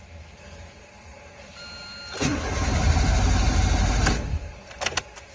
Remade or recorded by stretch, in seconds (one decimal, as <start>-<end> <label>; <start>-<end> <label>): 0.0-5.3 recorded